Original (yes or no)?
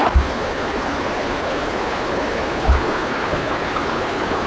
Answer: no